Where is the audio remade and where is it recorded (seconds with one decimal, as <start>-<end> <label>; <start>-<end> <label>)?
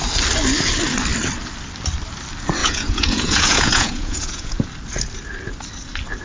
0.0-2.6 recorded; 2.6-4.6 remade; 4.6-6.2 recorded